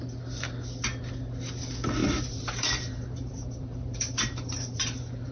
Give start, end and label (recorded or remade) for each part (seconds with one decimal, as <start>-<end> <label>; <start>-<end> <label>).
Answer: 0.0-2.0 recorded; 2.0-5.3 remade